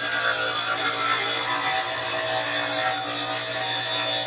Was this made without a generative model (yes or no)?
yes